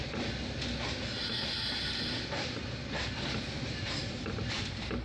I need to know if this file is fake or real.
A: real